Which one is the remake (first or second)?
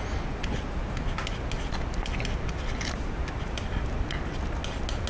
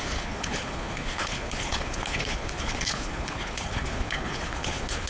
second